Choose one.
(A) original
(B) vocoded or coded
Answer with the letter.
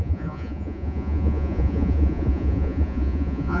B